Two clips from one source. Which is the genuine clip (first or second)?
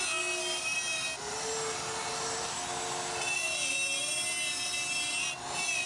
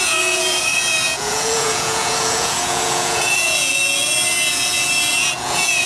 first